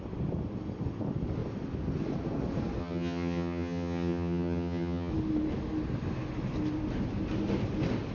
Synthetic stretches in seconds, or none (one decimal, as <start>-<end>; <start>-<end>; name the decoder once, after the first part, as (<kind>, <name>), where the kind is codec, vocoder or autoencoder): 2.8-5.1 (vocoder, HiFi-GAN)